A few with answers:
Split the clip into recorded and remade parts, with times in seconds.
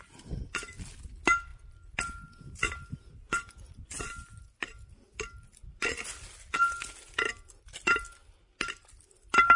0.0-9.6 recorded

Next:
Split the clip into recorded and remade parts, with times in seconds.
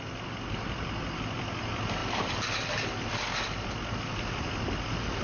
0.0-5.2 recorded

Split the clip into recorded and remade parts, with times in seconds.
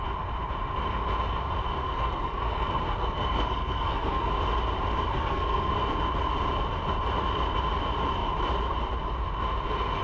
0.0-1.8 recorded; 1.8-4.3 remade; 4.3-5.1 recorded; 5.1-5.7 remade; 5.7-10.0 recorded